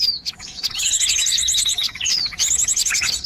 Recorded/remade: remade